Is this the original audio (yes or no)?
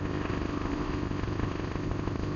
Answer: no